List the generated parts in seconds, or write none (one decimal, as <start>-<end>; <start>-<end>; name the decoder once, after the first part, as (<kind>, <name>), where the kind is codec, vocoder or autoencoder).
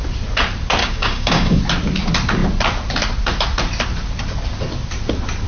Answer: 0.8-1.6 (codec, DAC)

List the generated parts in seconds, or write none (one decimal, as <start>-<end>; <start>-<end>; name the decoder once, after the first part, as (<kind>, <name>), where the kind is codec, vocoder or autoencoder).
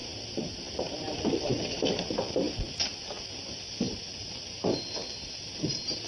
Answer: none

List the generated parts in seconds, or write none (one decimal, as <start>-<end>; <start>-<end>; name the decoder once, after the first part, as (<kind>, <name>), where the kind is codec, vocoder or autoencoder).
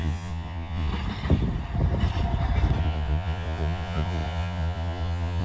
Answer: 0.0-0.9 (vocoder, Vocos); 2.8-5.4